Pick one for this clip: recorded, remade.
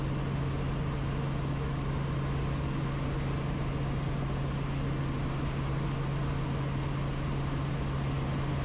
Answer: recorded